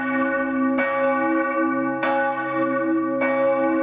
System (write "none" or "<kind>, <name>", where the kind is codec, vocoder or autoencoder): none